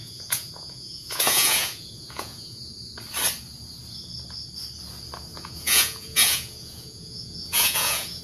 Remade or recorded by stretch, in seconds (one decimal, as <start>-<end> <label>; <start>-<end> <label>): 0.0-2.7 remade; 2.7-5.3 recorded; 5.3-8.2 remade